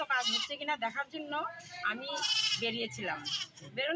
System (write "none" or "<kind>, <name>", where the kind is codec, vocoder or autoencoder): none